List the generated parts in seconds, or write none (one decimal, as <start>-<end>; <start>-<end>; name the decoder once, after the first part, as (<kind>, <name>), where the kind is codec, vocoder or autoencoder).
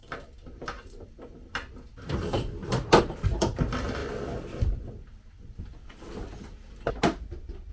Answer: 0.0-4.0 (vocoder, BigVGAN v2)